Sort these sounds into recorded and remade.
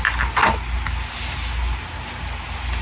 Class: recorded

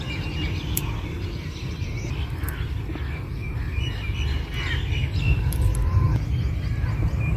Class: remade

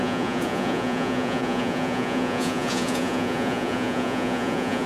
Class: remade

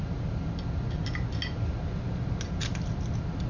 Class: recorded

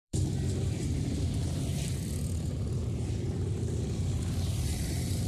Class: remade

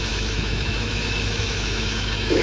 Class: remade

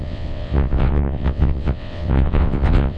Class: remade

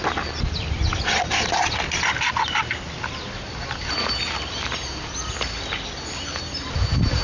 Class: recorded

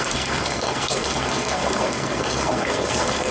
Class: remade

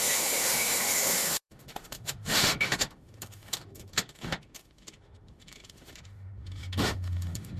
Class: remade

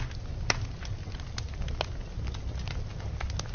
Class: recorded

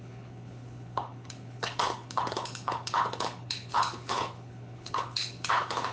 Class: remade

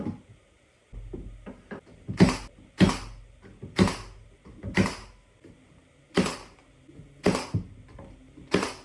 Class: recorded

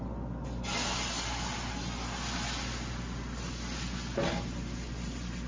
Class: recorded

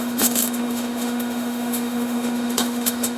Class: remade